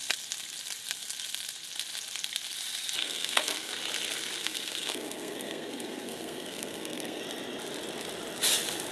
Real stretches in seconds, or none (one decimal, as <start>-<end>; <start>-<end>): 0.0-3.0; 3.7-4.4; 7.2-8.9